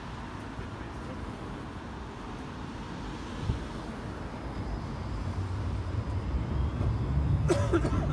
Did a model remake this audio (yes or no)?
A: no